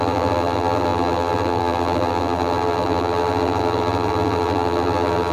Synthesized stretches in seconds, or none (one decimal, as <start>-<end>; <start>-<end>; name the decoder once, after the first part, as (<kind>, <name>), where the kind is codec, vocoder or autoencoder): 0.0-5.3 (vocoder, BigVGAN v2)